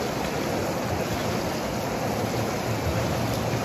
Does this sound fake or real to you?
real